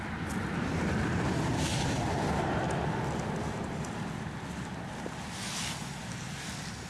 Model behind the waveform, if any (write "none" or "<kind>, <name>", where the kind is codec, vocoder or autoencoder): none